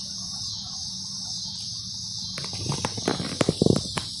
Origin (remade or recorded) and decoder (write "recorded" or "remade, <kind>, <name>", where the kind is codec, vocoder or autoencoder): remade, vocoder, BigVGAN v2